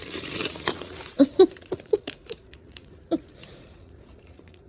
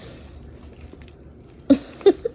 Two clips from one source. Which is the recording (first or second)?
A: second